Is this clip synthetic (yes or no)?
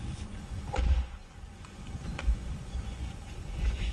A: yes